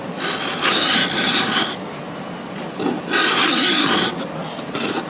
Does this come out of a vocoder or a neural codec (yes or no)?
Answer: no